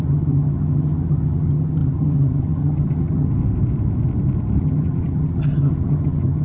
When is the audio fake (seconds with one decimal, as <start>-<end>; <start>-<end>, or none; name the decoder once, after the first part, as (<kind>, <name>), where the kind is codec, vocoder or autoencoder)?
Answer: 0.0-3.3 (vocoder, HiFi-GAN); 4.6-6.4